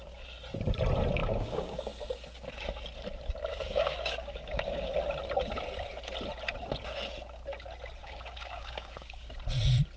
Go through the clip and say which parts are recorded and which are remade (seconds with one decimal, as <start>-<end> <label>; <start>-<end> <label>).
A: 0.0-1.2 recorded; 1.2-1.8 remade; 1.8-3.5 recorded; 3.5-4.9 remade; 4.9-8.0 recorded; 8.0-9.3 remade; 9.3-10.0 recorded

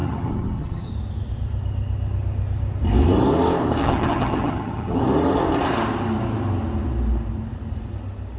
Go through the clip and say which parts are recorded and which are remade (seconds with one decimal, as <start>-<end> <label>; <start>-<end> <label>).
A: 0.0-0.9 remade; 0.9-3.8 recorded; 3.8-5.0 remade; 5.0-8.4 recorded

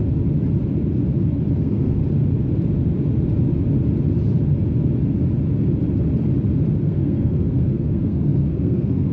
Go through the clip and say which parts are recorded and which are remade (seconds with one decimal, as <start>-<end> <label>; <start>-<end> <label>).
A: 0.0-1.6 recorded; 1.6-2.0 remade; 2.0-6.8 recorded; 6.8-9.1 remade

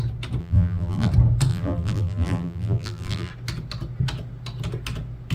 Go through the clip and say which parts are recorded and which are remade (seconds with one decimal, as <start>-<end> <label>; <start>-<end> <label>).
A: 0.0-0.4 recorded; 0.4-1.1 remade; 1.1-1.5 recorded; 1.5-3.3 remade; 3.3-5.3 recorded

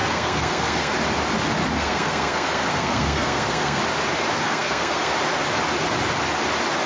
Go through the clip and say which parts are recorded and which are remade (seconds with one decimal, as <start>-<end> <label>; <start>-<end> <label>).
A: 0.0-0.9 remade; 0.9-1.7 recorded; 1.7-3.8 remade; 3.8-4.4 recorded; 4.4-5.1 remade; 5.1-6.9 recorded